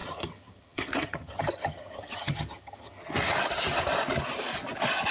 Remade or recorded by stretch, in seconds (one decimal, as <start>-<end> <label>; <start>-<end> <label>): 0.0-3.0 remade; 3.0-5.1 recorded